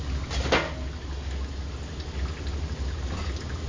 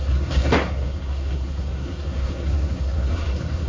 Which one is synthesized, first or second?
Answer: second